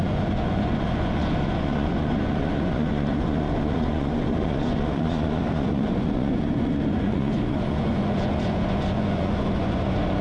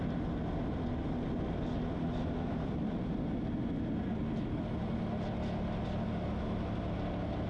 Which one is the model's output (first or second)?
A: first